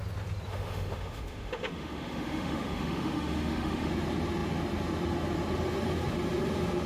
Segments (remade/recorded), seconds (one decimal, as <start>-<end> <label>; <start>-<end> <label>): 0.0-0.5 recorded; 0.5-3.9 remade; 3.9-6.9 recorded